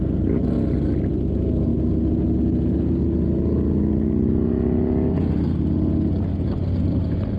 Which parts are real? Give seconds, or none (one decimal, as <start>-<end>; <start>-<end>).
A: 0.0-7.4